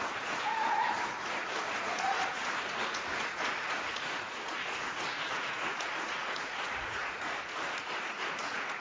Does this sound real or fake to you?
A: fake